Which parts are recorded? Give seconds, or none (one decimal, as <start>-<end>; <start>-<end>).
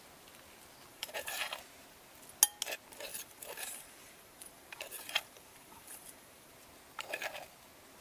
0.0-0.9; 1.5-3.1; 6.5-8.0